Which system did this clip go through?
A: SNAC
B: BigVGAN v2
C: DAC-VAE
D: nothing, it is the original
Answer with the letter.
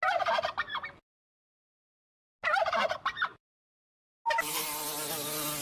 D